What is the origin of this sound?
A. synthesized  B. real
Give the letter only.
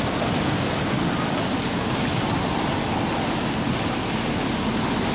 B